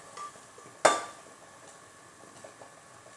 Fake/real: real